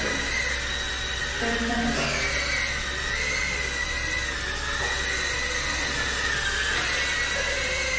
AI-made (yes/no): no